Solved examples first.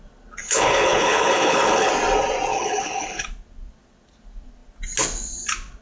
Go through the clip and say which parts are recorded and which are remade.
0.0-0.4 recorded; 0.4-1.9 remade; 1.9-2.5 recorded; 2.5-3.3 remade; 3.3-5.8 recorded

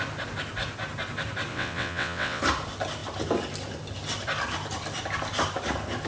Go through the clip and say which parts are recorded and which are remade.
0.0-1.5 recorded; 1.5-2.4 remade; 2.4-6.1 recorded